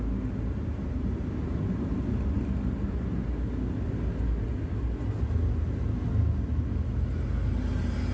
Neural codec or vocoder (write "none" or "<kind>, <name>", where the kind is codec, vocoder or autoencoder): none